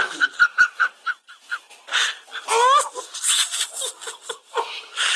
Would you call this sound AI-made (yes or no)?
no